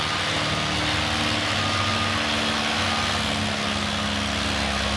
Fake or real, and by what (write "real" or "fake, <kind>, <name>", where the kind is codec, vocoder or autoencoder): real